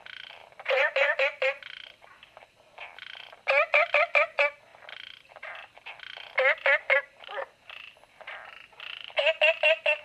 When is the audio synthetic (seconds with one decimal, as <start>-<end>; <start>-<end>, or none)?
0.4-2.8; 4.7-6.0